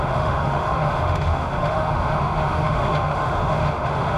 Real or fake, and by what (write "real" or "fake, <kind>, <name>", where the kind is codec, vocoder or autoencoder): fake, autoencoder, DAC-VAE